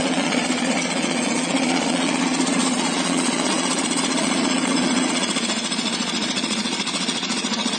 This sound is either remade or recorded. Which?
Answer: remade